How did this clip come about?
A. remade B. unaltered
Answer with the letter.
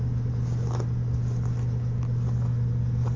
B